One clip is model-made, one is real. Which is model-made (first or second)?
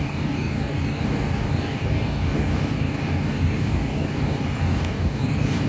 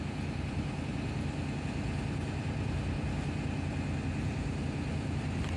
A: first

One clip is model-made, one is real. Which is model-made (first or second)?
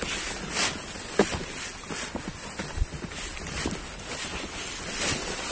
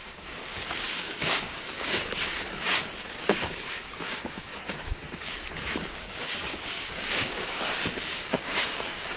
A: second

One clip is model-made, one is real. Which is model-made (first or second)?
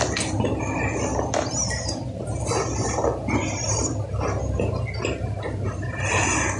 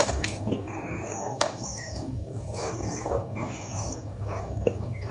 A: second